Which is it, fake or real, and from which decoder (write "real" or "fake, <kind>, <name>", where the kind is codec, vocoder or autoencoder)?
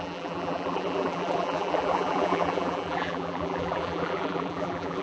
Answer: fake, vocoder, BigVGAN v2